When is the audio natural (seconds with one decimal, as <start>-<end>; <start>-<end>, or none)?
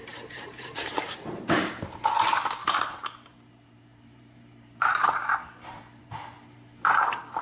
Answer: 1.7-2.6; 6.0-7.4